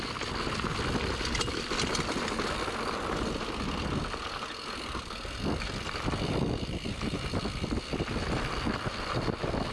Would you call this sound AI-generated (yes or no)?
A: no